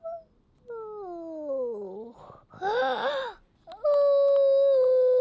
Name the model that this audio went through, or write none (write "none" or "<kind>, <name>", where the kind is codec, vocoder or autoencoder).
none